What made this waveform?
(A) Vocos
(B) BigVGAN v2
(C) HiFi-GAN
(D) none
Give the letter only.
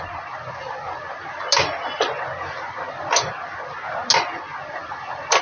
D